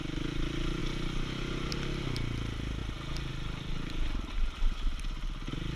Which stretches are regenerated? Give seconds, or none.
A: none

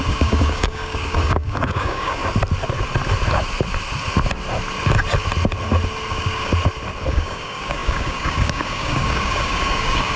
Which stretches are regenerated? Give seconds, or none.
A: 0.0-2.2 (codec, DAC); 6.1-6.5; 7.1-10.2

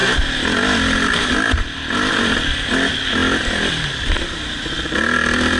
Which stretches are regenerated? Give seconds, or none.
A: none